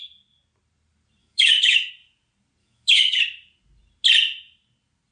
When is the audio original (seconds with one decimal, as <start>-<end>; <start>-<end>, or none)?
0.0-1.2; 1.9-2.6; 3.2-5.1